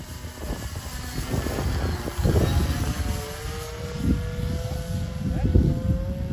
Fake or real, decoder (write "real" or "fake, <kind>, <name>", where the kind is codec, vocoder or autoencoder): real